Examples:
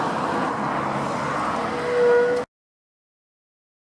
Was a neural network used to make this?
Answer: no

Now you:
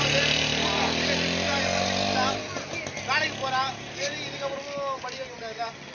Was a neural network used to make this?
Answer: no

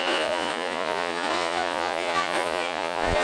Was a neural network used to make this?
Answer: yes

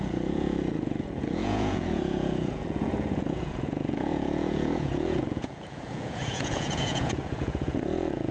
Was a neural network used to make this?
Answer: yes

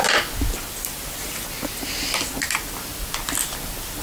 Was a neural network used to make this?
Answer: no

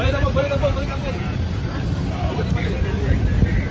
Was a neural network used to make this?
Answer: no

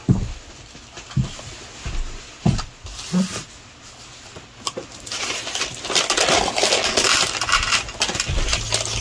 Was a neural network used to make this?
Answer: no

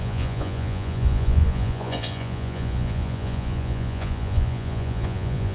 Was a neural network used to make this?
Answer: yes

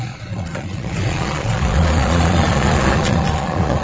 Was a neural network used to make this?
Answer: yes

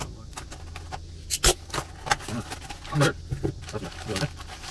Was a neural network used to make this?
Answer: no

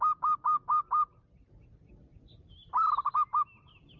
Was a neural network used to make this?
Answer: no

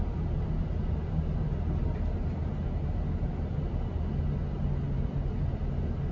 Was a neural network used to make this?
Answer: no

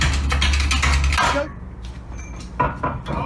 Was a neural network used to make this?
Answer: no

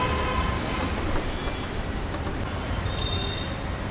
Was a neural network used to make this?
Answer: no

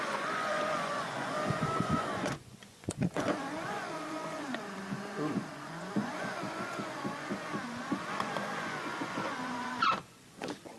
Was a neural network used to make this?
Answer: yes